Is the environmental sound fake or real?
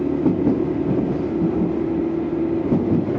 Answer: real